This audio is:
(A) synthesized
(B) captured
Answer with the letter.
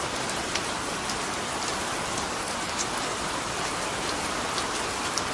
B